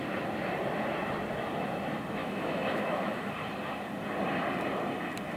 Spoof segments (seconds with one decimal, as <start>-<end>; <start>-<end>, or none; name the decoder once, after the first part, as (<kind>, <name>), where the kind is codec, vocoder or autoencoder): 2.2-3.3 (autoencoder, DAC-VAE)